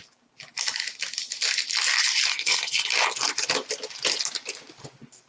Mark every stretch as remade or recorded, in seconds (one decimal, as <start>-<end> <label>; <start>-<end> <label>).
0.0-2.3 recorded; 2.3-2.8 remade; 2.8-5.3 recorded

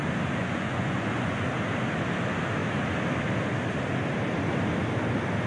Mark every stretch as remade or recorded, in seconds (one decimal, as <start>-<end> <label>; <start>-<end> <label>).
0.0-0.4 recorded; 0.4-1.5 remade; 1.5-5.5 recorded

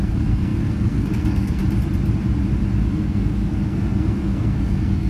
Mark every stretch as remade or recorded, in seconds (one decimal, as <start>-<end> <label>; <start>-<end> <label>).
0.0-1.6 remade; 1.6-2.9 recorded; 2.9-5.1 remade

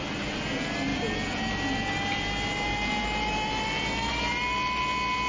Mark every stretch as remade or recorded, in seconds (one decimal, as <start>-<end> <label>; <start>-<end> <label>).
0.0-5.3 recorded

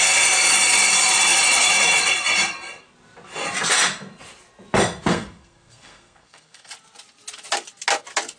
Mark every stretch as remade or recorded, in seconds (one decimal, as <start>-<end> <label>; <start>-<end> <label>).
0.0-5.1 recorded; 5.1-6.7 remade; 6.7-8.4 recorded

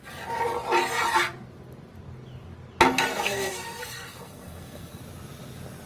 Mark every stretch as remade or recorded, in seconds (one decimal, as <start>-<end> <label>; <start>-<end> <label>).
0.0-3.1 recorded; 3.1-5.0 remade; 5.0-5.9 recorded

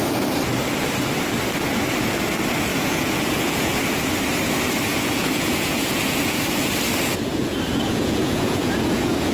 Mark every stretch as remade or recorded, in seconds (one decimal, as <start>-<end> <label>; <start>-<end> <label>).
0.0-2.7 recorded; 2.7-4.1 remade; 4.1-4.9 recorded; 4.9-6.4 remade; 6.4-7.3 recorded; 7.3-9.3 remade

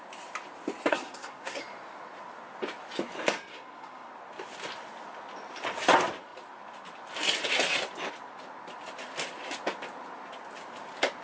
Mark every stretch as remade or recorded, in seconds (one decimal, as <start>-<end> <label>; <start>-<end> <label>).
0.0-0.9 recorded; 0.9-1.6 remade; 1.6-3.5 recorded; 3.5-4.1 remade; 4.1-11.2 recorded